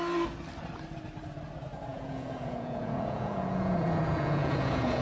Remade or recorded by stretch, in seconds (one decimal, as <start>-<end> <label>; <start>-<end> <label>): 0.0-1.9 recorded; 1.9-5.0 remade